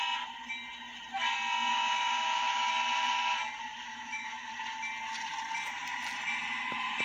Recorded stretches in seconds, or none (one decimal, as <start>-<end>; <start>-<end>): 0.0-1.7; 2.7-3.9; 4.5-7.0